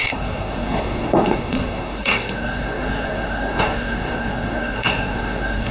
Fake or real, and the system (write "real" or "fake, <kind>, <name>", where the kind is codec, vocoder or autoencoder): fake, codec, SNAC